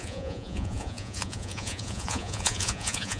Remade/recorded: remade